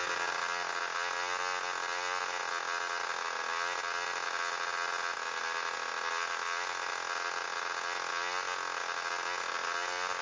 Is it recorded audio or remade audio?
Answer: recorded